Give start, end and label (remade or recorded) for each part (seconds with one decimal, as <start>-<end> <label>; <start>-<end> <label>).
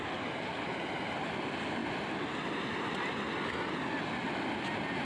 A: 0.0-5.0 recorded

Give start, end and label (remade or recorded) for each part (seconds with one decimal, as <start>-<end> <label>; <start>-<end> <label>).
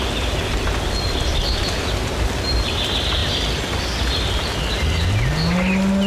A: 0.0-6.1 recorded